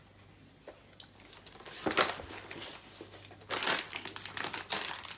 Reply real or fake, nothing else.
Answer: real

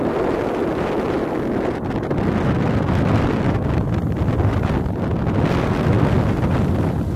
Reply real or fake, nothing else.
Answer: real